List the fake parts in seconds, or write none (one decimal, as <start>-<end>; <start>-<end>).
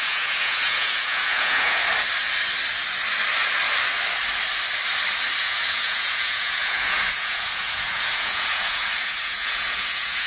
0.0-1.8; 5.4-10.3